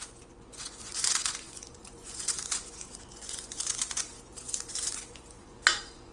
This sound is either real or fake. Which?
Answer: fake